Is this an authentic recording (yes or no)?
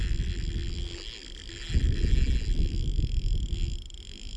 yes